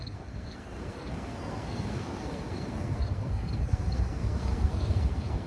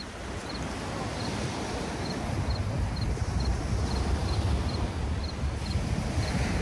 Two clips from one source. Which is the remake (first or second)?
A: first